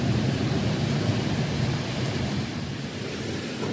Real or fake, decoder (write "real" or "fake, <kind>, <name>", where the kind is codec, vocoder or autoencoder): fake, vocoder, BigVGAN v2